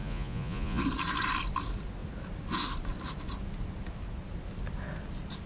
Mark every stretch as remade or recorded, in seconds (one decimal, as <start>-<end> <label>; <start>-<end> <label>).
0.0-0.8 remade; 0.8-5.5 recorded